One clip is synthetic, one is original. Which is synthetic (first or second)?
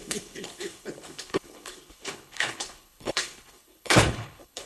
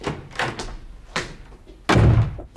first